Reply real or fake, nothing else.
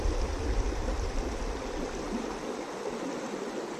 real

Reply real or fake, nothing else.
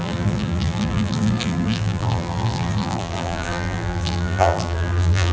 fake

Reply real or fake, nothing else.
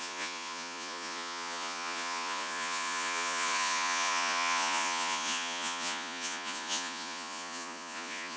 fake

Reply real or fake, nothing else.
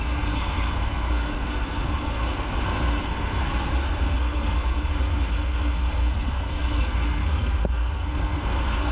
fake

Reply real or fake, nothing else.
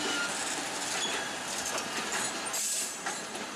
real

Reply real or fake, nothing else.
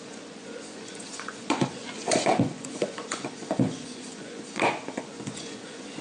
fake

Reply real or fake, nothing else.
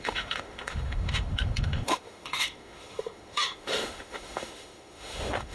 fake